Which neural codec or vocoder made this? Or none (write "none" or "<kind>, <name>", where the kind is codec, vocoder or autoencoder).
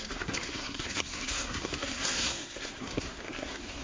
codec, SNAC